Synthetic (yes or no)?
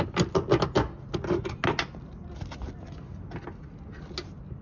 no